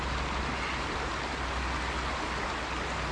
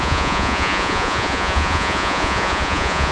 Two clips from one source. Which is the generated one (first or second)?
second